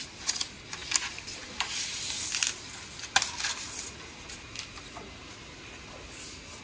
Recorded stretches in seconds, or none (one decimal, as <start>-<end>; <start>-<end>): 0.0-6.6